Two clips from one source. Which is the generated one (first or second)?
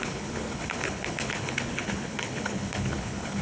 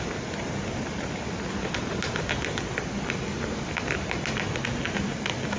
first